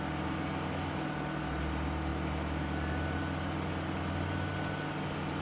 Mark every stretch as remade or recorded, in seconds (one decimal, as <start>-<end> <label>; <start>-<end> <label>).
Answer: 0.0-5.4 recorded